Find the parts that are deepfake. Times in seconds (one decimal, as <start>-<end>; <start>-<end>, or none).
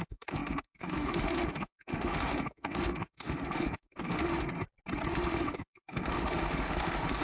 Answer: 0.0-4.5; 5.1-7.2